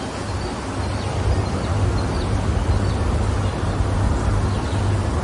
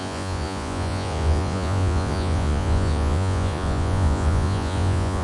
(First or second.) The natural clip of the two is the first